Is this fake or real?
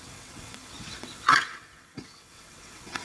fake